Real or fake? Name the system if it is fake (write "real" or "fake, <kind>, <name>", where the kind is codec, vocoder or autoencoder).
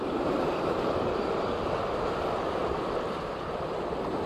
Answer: fake, vocoder, BigVGAN v2